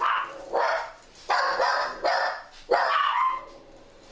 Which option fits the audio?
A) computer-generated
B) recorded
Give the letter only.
B